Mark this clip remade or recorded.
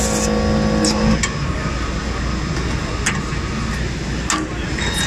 recorded